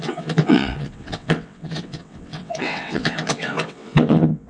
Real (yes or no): no